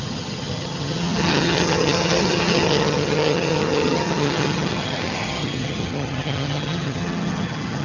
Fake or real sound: fake